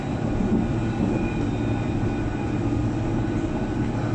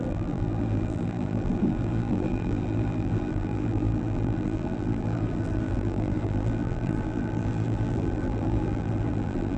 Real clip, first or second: first